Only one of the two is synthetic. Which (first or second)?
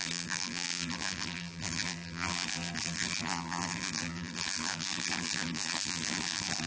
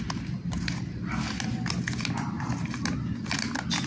first